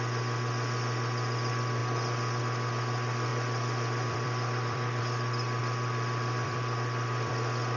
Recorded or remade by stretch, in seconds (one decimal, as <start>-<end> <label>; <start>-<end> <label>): 0.0-1.8 recorded; 1.8-2.4 remade; 2.4-3.3 recorded; 3.3-5.0 remade; 5.0-5.6 recorded; 5.6-7.3 remade; 7.3-7.8 recorded